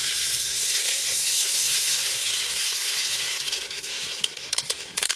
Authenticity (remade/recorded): remade